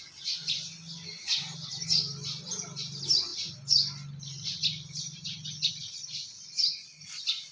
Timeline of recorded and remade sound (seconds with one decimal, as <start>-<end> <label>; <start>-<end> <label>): 0.0-7.5 recorded